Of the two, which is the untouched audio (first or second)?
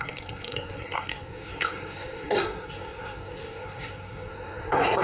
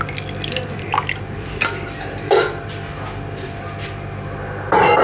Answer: second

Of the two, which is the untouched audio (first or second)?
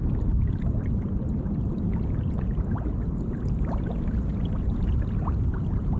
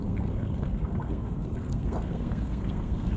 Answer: first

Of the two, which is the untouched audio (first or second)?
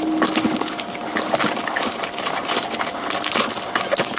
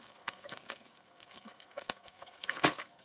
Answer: first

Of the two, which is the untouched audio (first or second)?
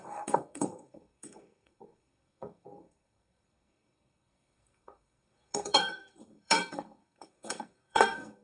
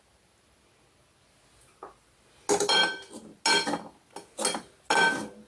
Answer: second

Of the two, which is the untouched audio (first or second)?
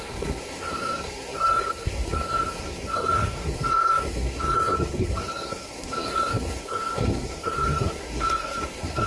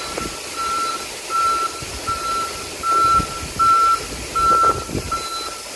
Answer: second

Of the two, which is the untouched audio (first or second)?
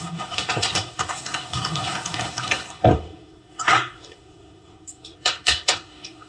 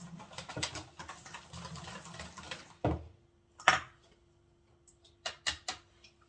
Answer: second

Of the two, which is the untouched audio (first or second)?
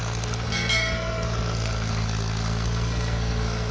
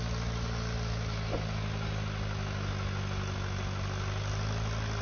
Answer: second